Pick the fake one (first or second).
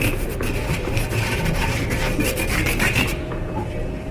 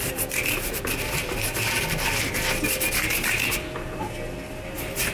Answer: first